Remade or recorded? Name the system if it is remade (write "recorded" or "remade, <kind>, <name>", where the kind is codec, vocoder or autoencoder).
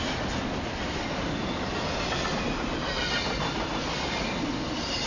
recorded